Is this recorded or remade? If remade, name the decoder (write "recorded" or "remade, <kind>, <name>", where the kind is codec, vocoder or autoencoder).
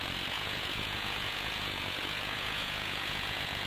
remade, vocoder, Vocos